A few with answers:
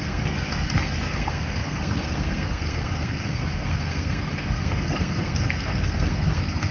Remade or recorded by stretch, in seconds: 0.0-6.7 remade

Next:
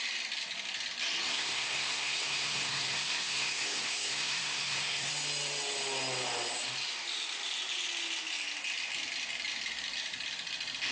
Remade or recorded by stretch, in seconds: 0.0-1.3 recorded; 1.3-5.1 remade; 5.1-10.9 recorded

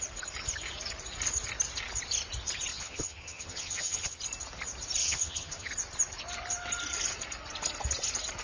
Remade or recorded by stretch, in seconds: 0.0-2.7 recorded; 2.7-4.2 remade; 4.2-5.0 recorded; 5.0-5.7 remade; 5.7-8.4 recorded